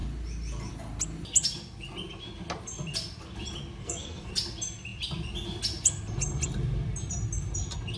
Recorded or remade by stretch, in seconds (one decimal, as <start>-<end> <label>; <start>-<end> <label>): 0.0-3.8 recorded; 3.8-4.3 remade; 4.3-8.0 recorded